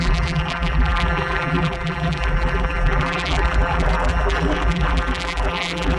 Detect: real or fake fake